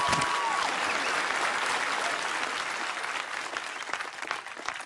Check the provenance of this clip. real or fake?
real